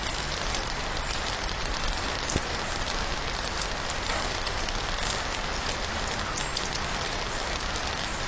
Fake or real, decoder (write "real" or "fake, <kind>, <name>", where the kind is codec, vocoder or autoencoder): real